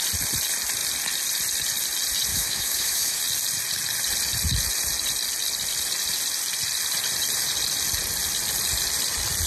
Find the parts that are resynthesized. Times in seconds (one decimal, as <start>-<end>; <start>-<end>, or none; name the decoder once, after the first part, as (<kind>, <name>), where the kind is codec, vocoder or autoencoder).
2.3-3.2 (autoencoder, DAC-VAE)

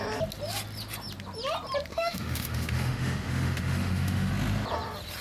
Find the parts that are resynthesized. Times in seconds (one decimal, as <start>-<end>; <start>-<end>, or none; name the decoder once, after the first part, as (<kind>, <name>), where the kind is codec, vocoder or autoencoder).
1.9-4.3 (autoencoder, DAC-VAE)

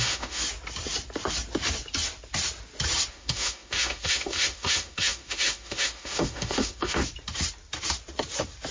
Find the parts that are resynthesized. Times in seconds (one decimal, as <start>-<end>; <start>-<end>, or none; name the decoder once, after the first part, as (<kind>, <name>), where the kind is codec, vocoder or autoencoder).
0.0-0.4 (autoencoder, DAC-VAE); 3.1-7.0

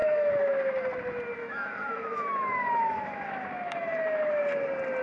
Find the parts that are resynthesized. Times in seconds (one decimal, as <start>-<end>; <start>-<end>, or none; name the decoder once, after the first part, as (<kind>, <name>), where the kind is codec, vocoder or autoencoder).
0.0-0.5 (autoencoder, DAC-VAE); 1.4-4.4

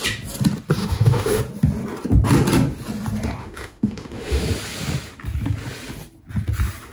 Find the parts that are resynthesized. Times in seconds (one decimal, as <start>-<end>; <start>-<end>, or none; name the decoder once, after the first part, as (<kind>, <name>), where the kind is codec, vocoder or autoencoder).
0.8-1.4 (autoencoder, DAC-VAE); 3.4-4.4